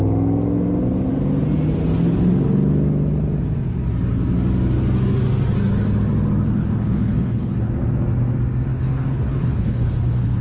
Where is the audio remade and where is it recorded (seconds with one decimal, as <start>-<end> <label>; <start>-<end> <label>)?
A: 0.0-6.6 recorded; 6.6-7.7 remade; 7.7-8.7 recorded; 8.7-10.4 remade